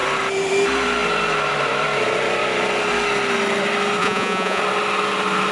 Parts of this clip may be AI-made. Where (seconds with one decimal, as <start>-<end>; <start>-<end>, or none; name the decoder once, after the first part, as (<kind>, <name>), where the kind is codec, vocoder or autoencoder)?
4.0-4.6 (vocoder, Vocos)